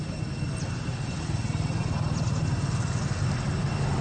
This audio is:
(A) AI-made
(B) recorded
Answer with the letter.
B